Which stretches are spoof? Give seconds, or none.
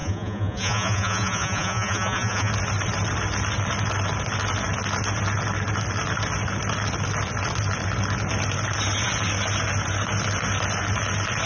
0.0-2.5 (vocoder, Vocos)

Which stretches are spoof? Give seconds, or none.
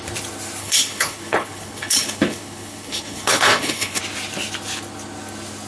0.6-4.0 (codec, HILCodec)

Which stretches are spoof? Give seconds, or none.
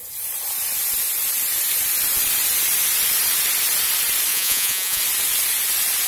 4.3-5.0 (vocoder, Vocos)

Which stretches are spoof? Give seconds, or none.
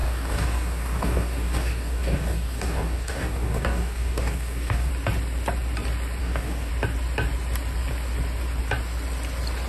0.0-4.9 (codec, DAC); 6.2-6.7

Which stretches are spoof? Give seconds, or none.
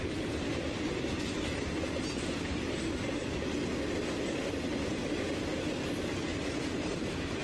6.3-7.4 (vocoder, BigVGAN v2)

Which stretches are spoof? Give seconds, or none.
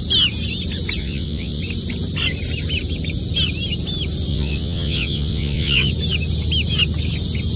1.0-1.6 (vocoder, WaveNeXt); 4.3-5.9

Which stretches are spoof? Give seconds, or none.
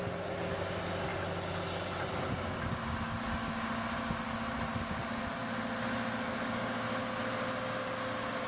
none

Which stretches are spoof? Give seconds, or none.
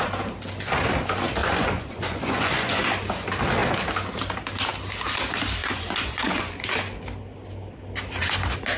1.4-2.7 (vocoder, Vocos); 5.6-6.6